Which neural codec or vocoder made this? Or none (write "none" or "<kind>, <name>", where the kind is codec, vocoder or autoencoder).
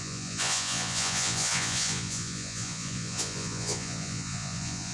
vocoder, Vocos